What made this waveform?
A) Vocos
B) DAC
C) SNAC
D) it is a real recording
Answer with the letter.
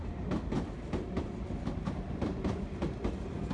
D